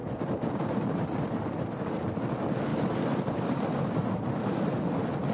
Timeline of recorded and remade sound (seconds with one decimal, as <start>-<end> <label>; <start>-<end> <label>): 0.0-1.8 remade; 1.8-2.7 recorded; 2.7-4.8 remade; 4.8-5.3 recorded